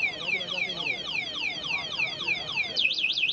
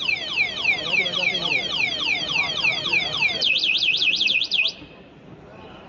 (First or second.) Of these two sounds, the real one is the first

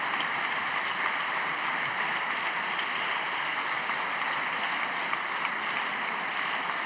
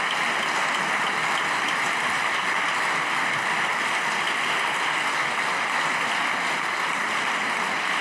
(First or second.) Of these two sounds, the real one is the second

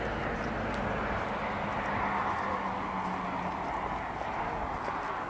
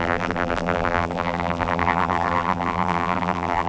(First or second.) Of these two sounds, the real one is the first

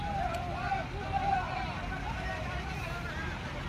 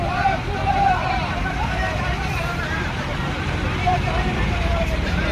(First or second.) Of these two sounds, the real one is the first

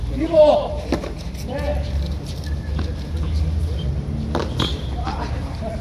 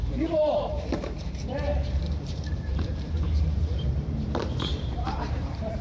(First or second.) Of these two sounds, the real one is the first